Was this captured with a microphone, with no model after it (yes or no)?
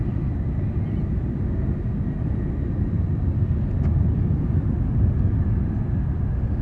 yes